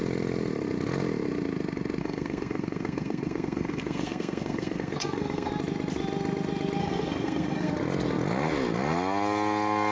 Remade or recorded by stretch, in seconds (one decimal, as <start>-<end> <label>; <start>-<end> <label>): 0.0-2.0 recorded; 2.0-5.5 remade; 5.5-6.8 recorded; 6.8-7.7 remade; 7.7-9.9 recorded